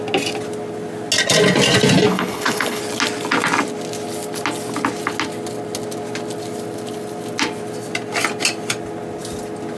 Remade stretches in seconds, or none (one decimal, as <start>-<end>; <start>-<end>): 2.1-2.8